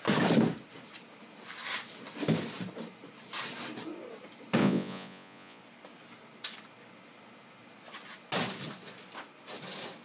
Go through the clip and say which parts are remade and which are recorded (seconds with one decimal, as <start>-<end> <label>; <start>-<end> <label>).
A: 0.0-4.6 recorded; 4.6-5.6 remade; 5.6-10.0 recorded